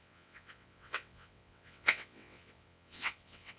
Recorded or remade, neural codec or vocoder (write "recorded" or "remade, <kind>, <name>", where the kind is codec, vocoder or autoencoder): remade, vocoder, WaveNeXt